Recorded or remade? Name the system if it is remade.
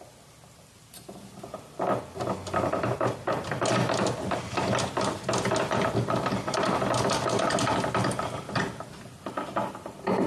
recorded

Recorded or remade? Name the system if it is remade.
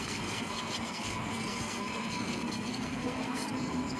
remade, codec, SNAC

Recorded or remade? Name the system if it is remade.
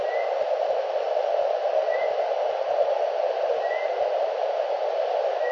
recorded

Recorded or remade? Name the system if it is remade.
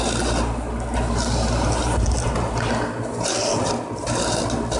recorded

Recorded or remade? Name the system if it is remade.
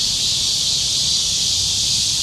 recorded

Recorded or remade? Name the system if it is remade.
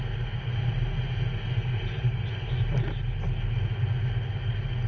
recorded